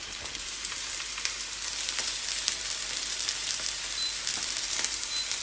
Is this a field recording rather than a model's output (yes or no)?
yes